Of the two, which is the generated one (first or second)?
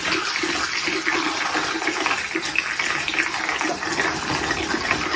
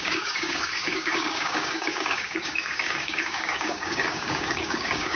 second